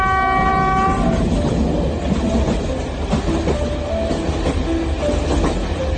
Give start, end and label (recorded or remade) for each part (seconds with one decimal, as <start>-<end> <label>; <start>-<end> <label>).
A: 0.0-6.0 recorded